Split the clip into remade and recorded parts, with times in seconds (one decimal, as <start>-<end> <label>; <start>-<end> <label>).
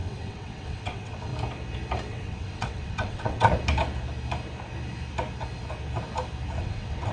0.0-1.3 remade; 1.3-2.1 recorded; 2.1-3.5 remade; 3.5-6.6 recorded; 6.6-7.1 remade